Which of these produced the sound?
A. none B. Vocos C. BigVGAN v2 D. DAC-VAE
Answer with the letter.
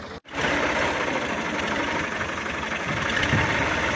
A